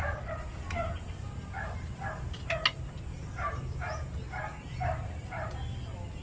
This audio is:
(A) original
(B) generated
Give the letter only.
A